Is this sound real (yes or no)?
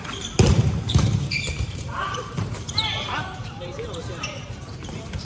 no